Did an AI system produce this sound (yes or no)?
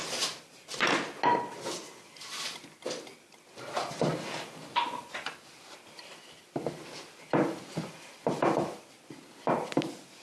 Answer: no